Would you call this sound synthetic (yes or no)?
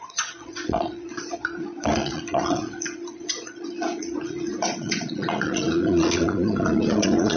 yes